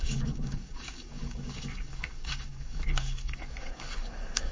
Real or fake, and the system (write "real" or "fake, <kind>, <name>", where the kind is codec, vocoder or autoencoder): fake, codec, DAC